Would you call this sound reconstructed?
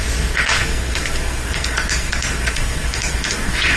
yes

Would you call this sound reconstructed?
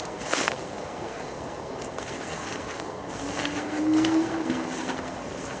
yes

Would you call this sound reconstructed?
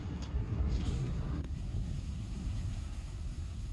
yes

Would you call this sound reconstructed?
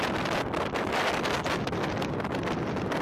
no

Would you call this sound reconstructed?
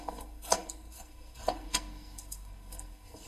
yes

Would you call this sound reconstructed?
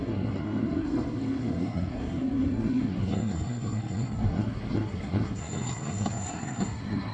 yes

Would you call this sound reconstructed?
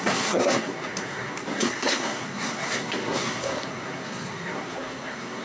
yes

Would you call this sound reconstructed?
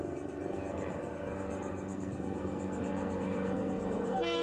yes